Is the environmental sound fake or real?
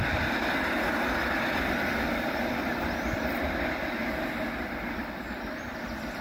real